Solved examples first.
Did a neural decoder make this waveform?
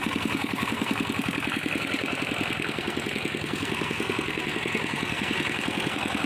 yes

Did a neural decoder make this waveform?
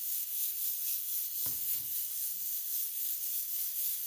yes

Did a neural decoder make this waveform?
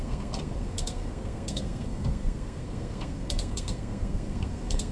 yes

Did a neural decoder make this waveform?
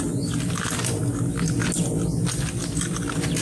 no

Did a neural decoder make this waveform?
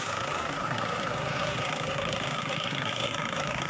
yes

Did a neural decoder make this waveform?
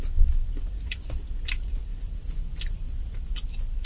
no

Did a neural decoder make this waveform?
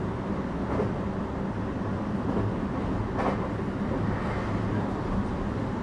no